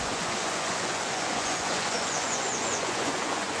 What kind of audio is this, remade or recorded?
remade